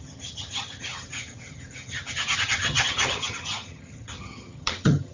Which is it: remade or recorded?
remade